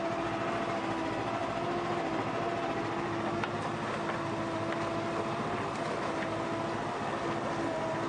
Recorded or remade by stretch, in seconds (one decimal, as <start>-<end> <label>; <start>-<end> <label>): 0.0-8.1 recorded